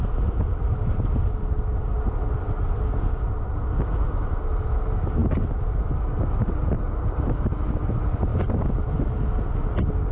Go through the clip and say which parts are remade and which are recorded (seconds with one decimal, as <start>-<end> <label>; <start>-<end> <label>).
0.0-10.1 recorded